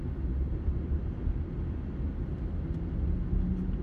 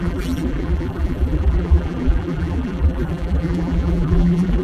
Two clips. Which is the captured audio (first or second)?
first